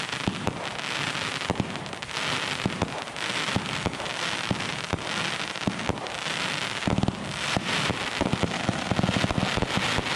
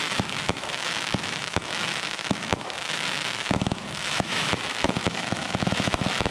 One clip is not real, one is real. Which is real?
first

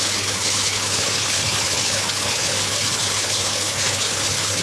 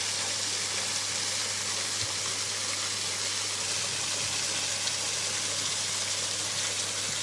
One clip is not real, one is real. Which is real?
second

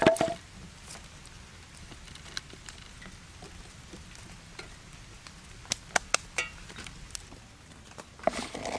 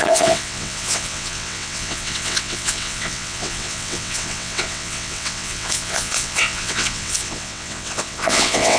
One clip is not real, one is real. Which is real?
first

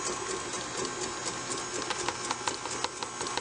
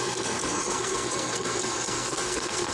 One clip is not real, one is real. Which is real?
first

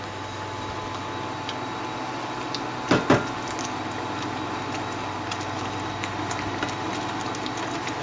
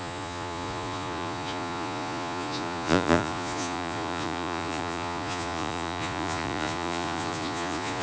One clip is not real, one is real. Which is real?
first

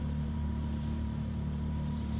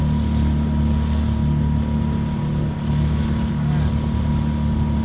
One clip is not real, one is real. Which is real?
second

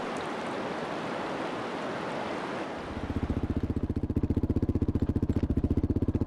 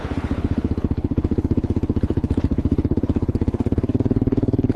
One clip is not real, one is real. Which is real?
first